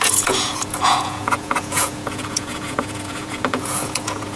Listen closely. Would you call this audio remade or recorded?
remade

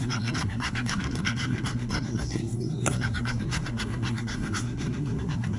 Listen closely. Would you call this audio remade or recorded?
remade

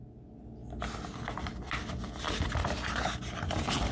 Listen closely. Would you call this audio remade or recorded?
recorded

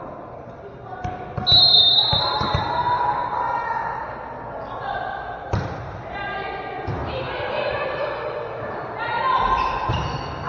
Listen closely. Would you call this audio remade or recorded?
recorded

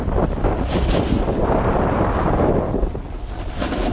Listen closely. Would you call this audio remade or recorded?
recorded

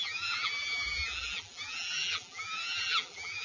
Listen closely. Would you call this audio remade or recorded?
remade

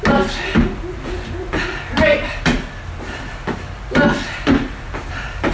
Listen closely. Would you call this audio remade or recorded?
recorded